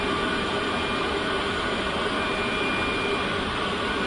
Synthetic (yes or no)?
no